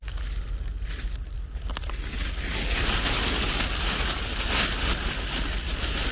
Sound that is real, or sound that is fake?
real